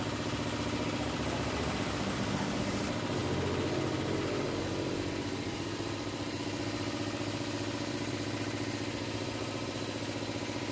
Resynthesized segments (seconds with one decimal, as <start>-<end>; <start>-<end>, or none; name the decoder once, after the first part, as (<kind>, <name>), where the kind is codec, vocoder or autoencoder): none